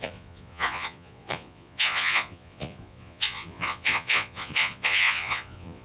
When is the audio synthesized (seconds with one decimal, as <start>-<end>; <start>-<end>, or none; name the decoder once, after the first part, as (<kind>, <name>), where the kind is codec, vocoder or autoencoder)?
0.0-5.8 (vocoder, Vocos)